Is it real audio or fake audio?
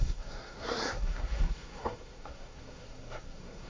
fake